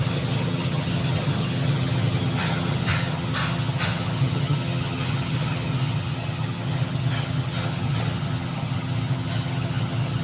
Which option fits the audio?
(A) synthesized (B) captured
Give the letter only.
A